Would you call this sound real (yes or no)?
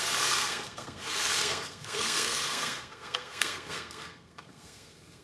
no